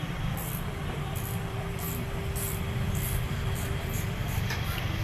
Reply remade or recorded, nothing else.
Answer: remade